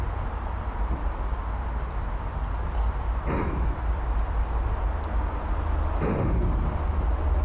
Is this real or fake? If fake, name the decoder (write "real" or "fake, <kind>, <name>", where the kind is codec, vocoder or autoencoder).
real